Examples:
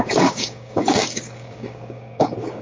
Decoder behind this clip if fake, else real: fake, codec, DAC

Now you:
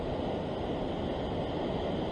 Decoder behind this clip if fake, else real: real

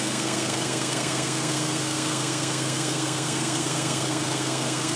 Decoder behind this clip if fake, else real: fake, codec, SNAC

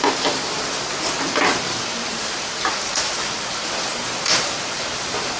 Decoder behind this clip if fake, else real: real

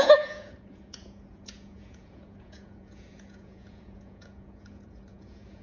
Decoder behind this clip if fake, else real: fake, vocoder, Vocos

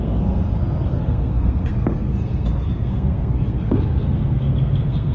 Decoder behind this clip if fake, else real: fake, codec, SNAC